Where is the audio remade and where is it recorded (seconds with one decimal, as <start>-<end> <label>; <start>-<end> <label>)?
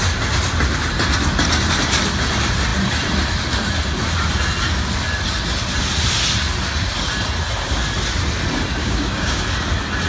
0.0-8.8 recorded; 8.8-9.4 remade; 9.4-10.1 recorded